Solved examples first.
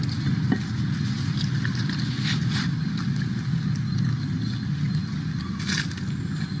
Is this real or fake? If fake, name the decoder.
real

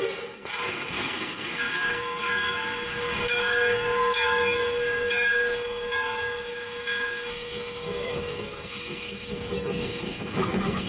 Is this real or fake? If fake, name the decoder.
fake, codec, SNAC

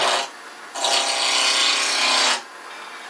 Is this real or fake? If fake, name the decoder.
real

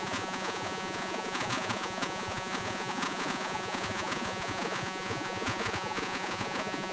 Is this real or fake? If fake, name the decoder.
fake, vocoder, Vocos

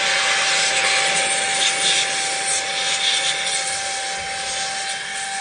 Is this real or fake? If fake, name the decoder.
real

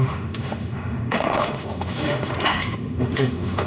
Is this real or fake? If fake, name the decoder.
fake, autoencoder, DAC-VAE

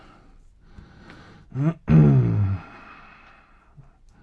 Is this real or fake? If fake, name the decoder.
real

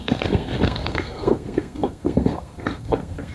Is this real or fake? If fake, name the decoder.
fake, codec, SNAC